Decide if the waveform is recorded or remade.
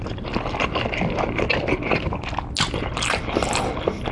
recorded